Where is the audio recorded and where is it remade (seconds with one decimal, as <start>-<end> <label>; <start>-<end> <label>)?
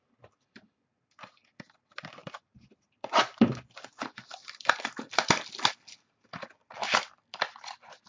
0.0-2.2 recorded; 2.2-3.5 remade; 3.5-8.1 recorded